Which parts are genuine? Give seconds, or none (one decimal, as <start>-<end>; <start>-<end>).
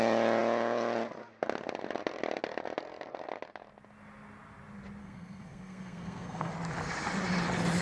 0.0-5.0; 6.5-7.8